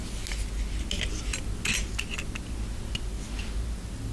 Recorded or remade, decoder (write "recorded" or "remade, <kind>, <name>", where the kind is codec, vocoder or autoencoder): recorded